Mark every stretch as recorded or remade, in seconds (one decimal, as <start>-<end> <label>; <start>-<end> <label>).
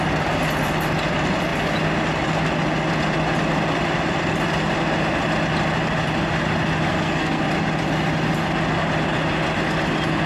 0.0-6.9 recorded; 6.9-7.4 remade; 7.4-10.3 recorded